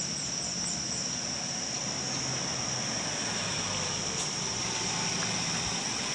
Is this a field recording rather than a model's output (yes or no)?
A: yes